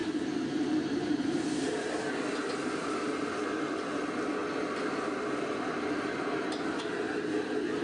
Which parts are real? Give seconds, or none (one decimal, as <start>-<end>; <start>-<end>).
2.1-7.8